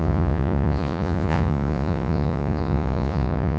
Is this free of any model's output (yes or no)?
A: no